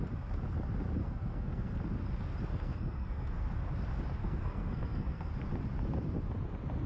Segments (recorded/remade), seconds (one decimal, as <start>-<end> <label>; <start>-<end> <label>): 0.0-1.0 recorded; 1.0-1.7 remade; 1.7-2.5 recorded; 2.5-3.6 remade; 3.6-4.2 recorded; 4.2-5.3 remade; 5.3-6.9 recorded